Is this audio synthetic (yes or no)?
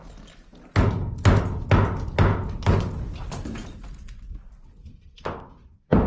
no